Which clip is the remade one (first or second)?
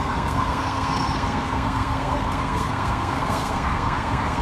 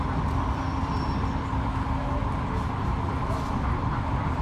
first